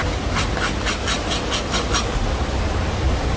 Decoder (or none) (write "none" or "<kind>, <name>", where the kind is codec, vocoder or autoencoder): none